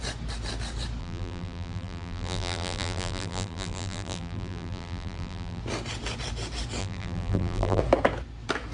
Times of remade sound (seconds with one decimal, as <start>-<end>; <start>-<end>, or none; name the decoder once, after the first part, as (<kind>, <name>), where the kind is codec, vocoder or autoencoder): 1.0-5.6 (vocoder, BigVGAN v2); 6.8-7.8